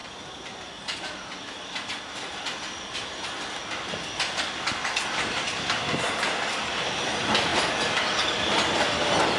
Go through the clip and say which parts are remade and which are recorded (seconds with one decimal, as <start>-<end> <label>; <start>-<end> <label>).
0.0-9.4 recorded